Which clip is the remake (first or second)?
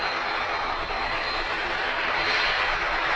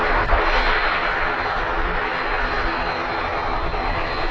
first